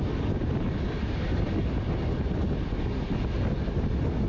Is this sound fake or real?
real